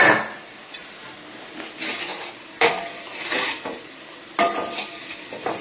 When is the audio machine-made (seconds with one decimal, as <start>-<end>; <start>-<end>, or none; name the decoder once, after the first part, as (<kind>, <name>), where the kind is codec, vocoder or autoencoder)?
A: 2.1-2.7 (vocoder, BigVGAN v2)